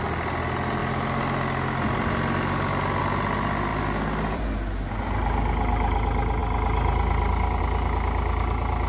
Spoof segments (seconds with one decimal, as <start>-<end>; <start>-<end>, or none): none